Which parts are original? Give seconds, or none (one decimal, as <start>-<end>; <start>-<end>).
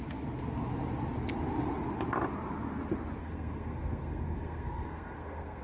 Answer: 0.0-3.2